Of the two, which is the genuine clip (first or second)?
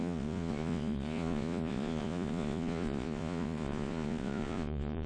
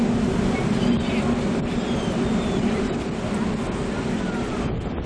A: second